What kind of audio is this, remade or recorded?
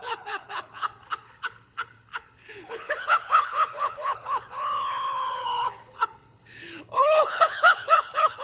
remade